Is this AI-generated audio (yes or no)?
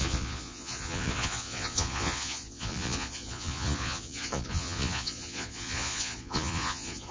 yes